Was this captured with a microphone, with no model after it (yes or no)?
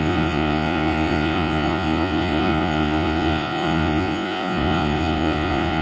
no